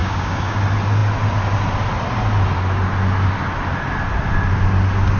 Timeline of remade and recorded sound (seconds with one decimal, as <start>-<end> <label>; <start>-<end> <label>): 0.0-0.6 remade; 0.6-5.2 recorded

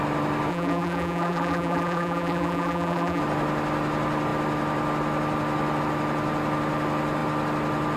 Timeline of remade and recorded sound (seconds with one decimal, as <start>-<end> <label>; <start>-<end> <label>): 0.0-0.5 recorded; 0.5-3.2 remade; 3.2-8.0 recorded